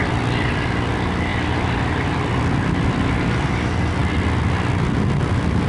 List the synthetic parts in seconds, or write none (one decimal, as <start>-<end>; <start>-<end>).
none